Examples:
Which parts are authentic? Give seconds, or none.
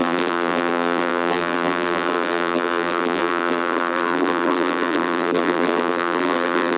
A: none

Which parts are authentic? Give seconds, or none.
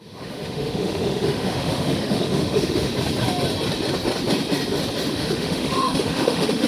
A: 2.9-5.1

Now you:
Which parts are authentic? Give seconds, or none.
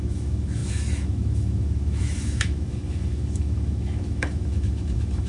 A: none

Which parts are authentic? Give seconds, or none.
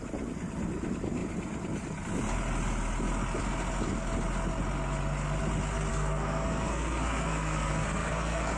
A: 0.0-5.9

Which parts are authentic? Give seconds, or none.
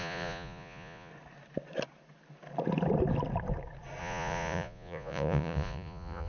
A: 1.1-4.0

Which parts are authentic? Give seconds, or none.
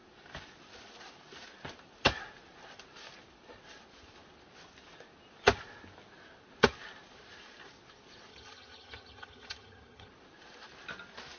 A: 0.0-8.3; 10.1-11.4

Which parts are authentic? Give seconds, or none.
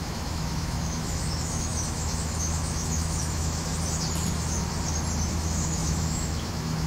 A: 3.7-5.3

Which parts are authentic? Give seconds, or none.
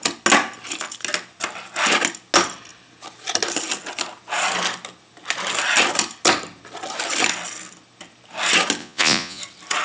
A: 0.0-8.8; 9.4-9.8